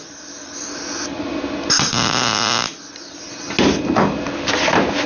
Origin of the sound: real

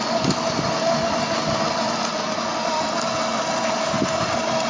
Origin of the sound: real